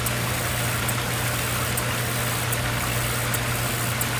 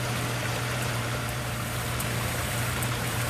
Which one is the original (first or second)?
first